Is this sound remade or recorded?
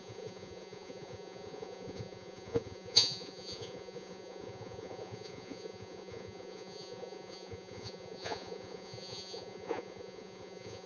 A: remade